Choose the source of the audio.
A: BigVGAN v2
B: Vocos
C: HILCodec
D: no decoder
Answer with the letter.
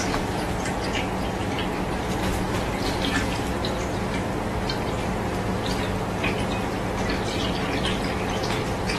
D